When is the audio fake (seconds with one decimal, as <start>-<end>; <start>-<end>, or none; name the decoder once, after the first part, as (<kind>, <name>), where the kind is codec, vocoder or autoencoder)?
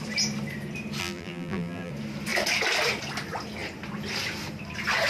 1.0-1.9 (vocoder, BigVGAN v2)